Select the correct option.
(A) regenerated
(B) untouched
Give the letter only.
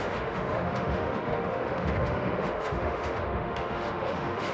A